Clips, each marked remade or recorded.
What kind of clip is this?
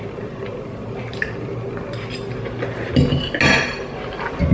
recorded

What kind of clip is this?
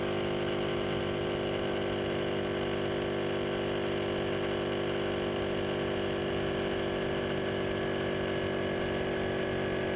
recorded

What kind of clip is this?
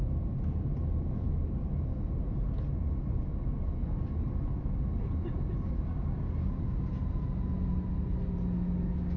recorded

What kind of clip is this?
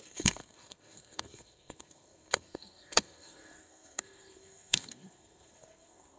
remade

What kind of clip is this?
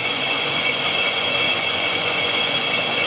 remade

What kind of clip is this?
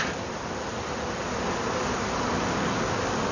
recorded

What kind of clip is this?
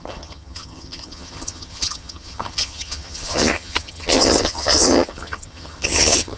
remade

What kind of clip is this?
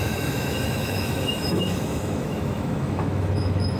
remade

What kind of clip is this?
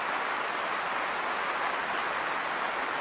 recorded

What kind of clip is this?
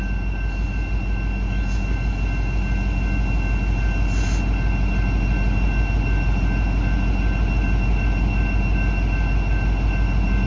recorded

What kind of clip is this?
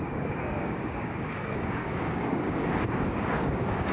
remade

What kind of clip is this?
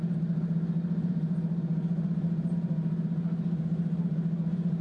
remade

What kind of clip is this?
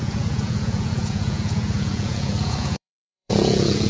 remade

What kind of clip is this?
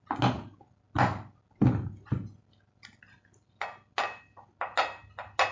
recorded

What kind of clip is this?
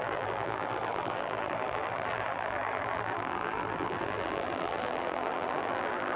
remade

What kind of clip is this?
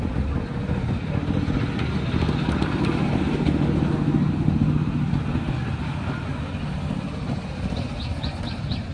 recorded